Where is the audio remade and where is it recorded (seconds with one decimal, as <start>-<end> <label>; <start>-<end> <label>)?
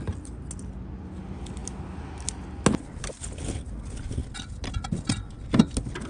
0.0-6.1 recorded